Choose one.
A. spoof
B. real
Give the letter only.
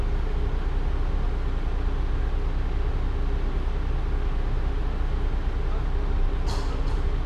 B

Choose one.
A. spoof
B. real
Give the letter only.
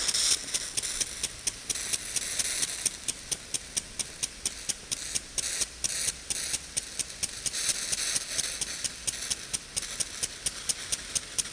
B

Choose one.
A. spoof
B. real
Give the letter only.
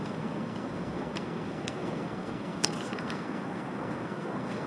A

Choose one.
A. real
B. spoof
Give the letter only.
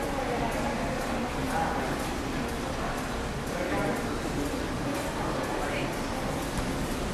A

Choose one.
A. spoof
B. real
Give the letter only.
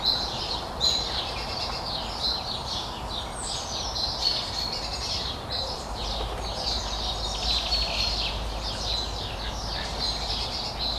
B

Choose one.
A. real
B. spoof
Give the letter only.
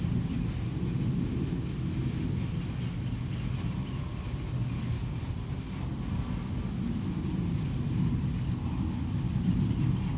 A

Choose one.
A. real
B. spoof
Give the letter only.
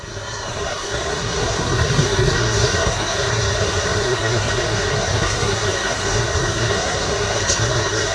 B